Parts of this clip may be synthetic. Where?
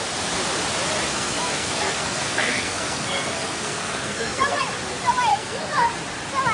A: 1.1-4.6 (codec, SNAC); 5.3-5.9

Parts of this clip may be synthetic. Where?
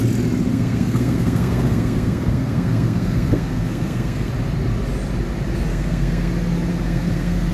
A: 0.5-4.3 (codec, SNAC); 5.7-6.3; 6.7-7.5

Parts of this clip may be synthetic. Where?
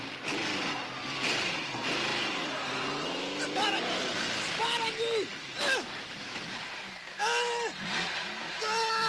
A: none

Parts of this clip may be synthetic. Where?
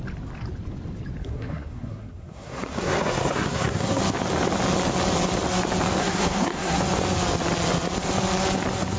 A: 1.2-4.0 (codec, SNAC); 6.0-6.8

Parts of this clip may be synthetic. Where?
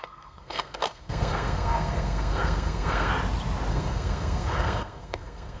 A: 0.0-3.1 (codec, SNAC); 3.7-5.6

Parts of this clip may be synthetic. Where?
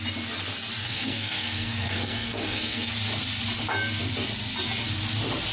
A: 0.8-2.9 (codec, SNAC)